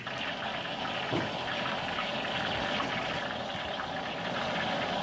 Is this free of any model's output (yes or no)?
yes